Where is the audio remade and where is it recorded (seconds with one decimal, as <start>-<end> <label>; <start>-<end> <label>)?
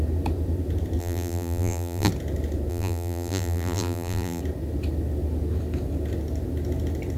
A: 0.0-1.0 recorded; 1.0-2.1 remade; 2.1-2.7 recorded; 2.7-4.4 remade; 4.4-7.2 recorded